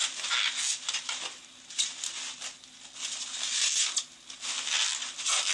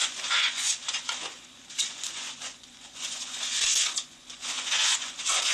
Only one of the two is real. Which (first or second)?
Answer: first